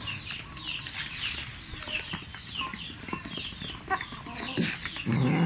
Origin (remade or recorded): recorded